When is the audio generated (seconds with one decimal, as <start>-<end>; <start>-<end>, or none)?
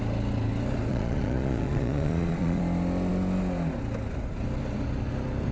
0.9-2.6